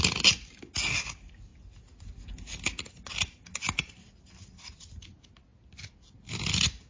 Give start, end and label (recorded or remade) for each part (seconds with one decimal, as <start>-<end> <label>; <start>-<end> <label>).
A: 0.0-6.9 recorded